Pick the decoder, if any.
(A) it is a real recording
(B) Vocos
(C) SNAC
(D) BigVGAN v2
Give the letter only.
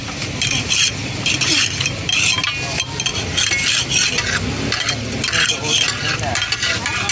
A